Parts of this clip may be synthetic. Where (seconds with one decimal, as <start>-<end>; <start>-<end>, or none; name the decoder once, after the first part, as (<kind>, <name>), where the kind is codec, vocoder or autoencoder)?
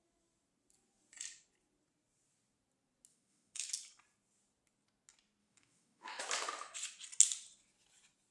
3.1-3.7 (autoencoder, DAC-VAE); 5.4-6.2